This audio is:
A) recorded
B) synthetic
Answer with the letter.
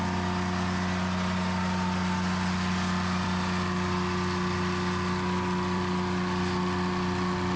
A